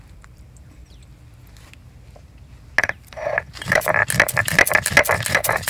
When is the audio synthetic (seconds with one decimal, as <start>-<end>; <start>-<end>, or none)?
0.0-0.8; 2.8-4.0; 5.3-5.7